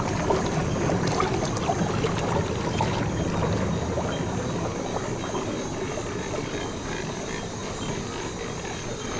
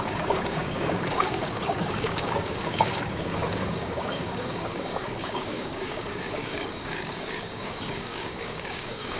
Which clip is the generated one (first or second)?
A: second